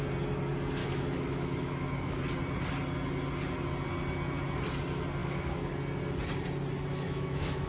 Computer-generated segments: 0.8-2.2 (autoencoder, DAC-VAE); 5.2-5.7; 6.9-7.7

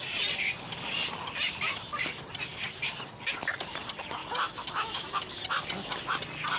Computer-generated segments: 4.2-5.3 (autoencoder, DAC-VAE)

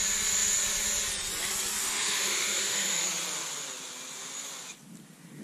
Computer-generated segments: 1.8-3.0 (autoencoder, DAC-VAE)

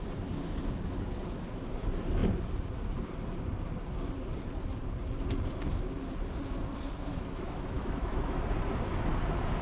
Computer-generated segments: 7.1-8.4 (autoencoder, DAC-VAE)

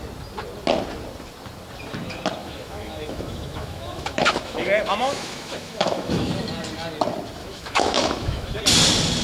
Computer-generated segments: 2.4-6.3 (autoencoder, DAC-VAE); 7.4-8.6

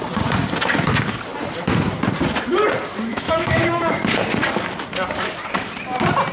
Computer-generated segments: 3.1-4.0 (autoencoder, DAC-VAE)

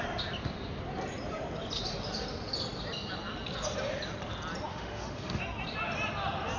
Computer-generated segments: 4.7-5.4 (autoencoder, DAC-VAE)